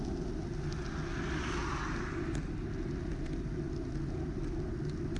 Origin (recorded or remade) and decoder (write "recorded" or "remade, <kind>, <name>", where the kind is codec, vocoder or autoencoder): recorded